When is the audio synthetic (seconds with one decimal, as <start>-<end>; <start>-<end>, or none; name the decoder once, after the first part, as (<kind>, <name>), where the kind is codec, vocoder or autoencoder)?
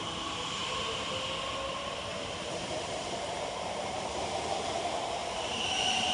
0.0-0.6 (vocoder, BigVGAN v2); 1.7-6.1